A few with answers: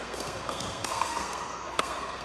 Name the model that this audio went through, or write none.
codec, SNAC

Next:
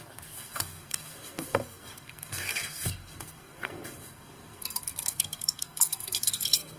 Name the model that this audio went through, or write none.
codec, SNAC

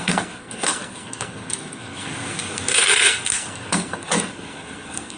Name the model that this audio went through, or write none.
codec, SNAC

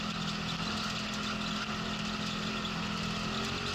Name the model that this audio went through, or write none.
none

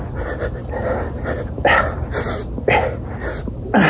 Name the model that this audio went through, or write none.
none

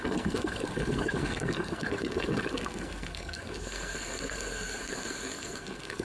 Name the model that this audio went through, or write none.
codec, SNAC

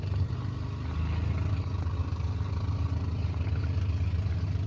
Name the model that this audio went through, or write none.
none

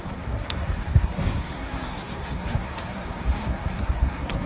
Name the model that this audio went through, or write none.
codec, SNAC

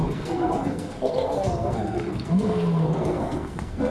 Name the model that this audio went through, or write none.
codec, SNAC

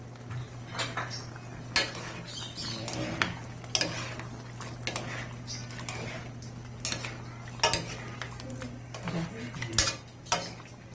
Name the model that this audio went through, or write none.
none